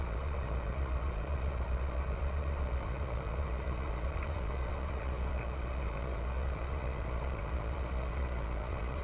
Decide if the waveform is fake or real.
fake